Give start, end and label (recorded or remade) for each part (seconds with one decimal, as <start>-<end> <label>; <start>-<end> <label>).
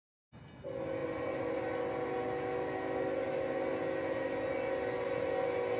0.0-5.8 recorded